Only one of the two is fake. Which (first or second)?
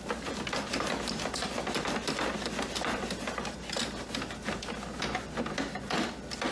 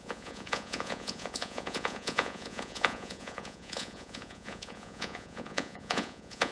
second